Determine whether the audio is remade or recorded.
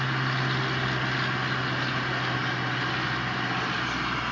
recorded